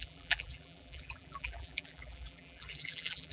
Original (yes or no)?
no